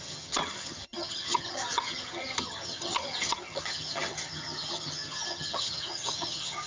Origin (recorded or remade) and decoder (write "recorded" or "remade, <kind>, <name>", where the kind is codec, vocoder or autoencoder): remade, vocoder, HiFi-GAN